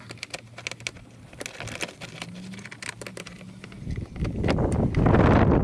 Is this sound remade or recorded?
recorded